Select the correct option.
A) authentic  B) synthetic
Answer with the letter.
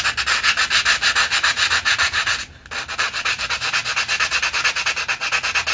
A